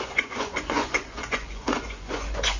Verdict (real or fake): fake